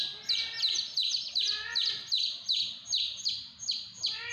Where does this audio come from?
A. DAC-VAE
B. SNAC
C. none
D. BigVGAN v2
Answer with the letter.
C